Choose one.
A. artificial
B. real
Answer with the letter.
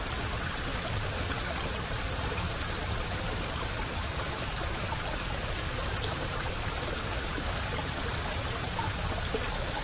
A